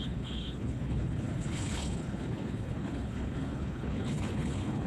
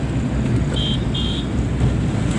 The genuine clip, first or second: second